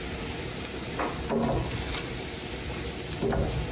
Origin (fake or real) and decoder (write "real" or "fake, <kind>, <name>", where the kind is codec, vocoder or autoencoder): real